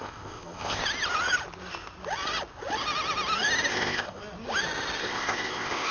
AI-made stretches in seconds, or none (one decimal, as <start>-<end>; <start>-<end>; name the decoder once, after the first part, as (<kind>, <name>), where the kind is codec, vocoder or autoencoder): 0.0-0.8 (codec, ZipCodec); 3.7-4.2; 5.0-5.9

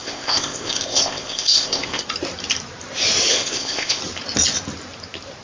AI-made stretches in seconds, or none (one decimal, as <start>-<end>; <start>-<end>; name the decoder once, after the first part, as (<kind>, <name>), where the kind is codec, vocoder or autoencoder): 0.0-2.0 (codec, ZipCodec); 3.3-4.0

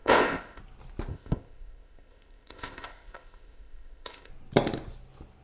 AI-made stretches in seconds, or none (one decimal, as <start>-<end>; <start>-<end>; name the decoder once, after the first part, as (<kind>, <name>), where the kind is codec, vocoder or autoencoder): 0.0-0.6 (codec, ZipCodec); 1.1-4.3